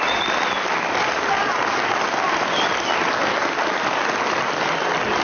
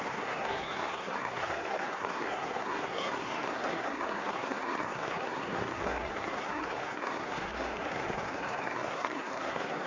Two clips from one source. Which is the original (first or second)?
first